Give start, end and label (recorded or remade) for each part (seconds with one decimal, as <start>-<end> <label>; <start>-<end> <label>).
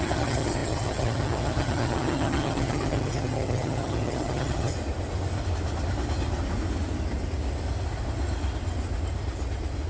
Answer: 0.0-4.7 remade; 4.7-9.9 recorded